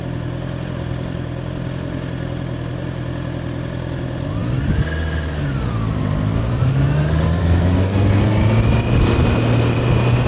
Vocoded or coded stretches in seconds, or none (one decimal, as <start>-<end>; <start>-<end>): 7.4-8.3